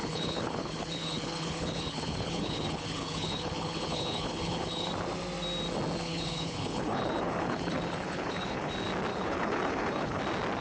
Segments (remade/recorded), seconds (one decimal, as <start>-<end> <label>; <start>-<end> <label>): 0.0-4.9 remade; 4.9-6.0 recorded; 6.0-8.7 remade; 8.7-9.1 recorded; 9.1-10.2 remade; 10.2-10.6 recorded